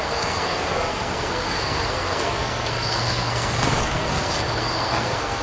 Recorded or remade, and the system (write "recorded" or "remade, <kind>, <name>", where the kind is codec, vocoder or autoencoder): remade, codec, SNAC